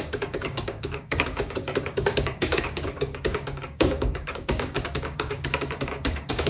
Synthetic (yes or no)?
yes